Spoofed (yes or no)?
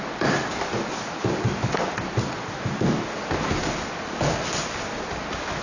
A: no